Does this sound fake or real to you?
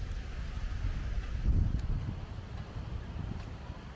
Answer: real